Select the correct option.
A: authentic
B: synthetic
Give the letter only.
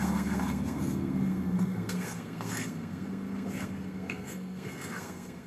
B